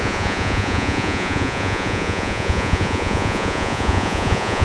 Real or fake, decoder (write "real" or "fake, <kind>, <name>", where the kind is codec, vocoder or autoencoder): fake, vocoder, Vocos